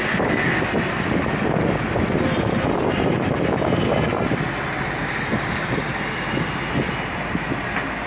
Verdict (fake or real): real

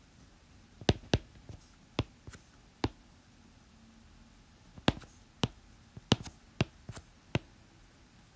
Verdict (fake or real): real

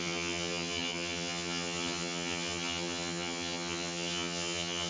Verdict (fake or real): fake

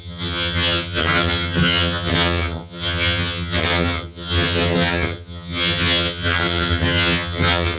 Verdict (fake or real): fake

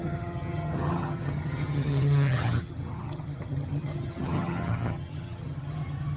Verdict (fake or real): fake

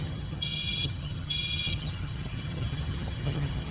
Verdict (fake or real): fake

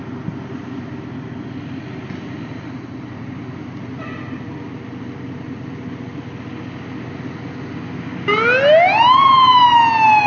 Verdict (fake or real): real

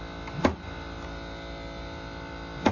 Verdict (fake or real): real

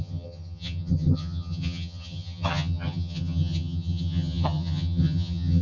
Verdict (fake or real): fake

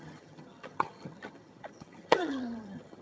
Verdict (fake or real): fake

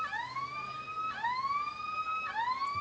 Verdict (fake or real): real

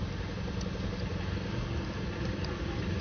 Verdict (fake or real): real